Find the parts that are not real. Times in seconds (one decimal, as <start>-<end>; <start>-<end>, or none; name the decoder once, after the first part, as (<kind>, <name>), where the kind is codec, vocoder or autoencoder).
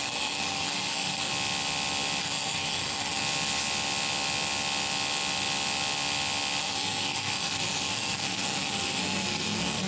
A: 0.0-1.3 (codec, SNAC); 2.2-3.2; 6.6-9.9